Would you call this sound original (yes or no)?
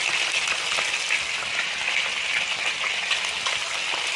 yes